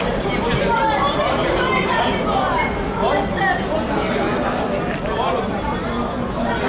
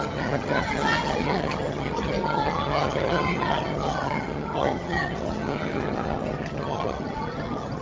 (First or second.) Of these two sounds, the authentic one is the first